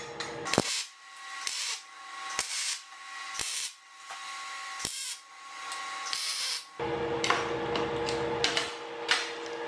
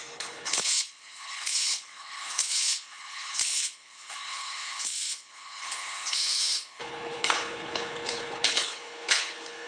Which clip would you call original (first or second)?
first